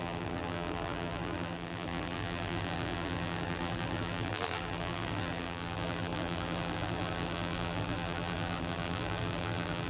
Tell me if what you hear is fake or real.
fake